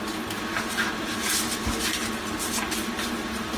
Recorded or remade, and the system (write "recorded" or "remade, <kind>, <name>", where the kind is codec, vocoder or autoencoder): recorded